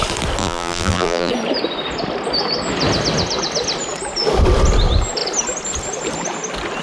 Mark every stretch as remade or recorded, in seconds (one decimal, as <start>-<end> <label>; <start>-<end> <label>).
0.0-0.4 recorded; 0.4-1.3 remade; 1.3-6.8 recorded